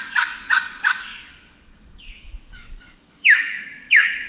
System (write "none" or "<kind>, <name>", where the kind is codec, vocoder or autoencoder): codec, DAC